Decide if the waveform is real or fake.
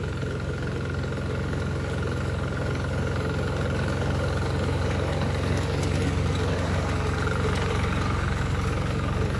fake